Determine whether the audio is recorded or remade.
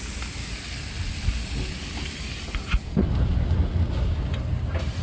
recorded